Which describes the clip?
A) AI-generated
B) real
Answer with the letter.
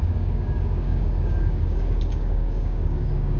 A